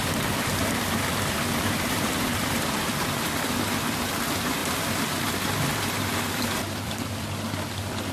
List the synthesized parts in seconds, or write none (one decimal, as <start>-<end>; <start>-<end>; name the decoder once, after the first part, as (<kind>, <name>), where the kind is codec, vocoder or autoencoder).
0.0-8.1 (vocoder, BigVGAN v2)